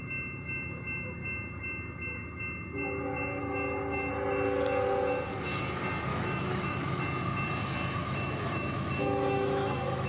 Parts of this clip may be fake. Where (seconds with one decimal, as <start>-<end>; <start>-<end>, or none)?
3.4-4.1; 6.1-7.0; 8.0-10.1